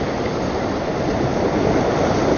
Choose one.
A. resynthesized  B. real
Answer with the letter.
B